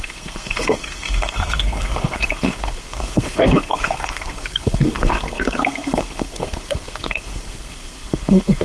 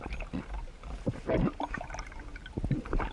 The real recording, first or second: second